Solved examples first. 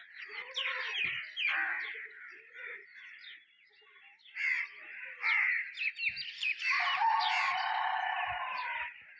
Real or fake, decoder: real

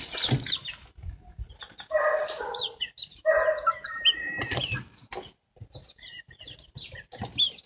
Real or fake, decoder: real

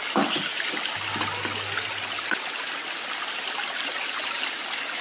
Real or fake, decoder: real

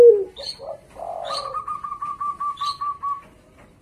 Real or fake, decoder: real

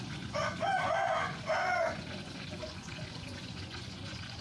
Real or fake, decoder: fake, vocoder, Vocos